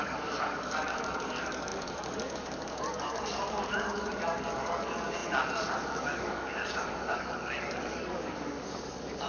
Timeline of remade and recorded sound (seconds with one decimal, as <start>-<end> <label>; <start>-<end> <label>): 0.0-9.3 remade